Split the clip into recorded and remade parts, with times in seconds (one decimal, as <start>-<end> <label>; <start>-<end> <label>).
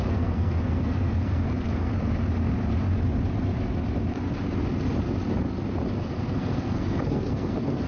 0.0-1.9 remade; 1.9-5.9 recorded; 5.9-7.9 remade